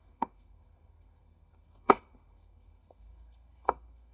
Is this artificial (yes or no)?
yes